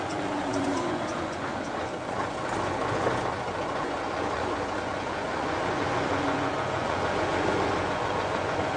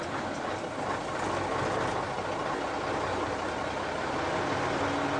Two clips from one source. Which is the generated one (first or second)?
first